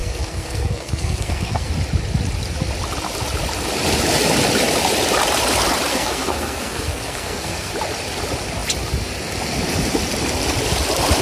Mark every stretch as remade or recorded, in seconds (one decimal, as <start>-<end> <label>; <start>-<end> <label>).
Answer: 0.0-1.7 remade; 1.7-5.9 recorded; 5.9-7.7 remade; 7.7-11.2 recorded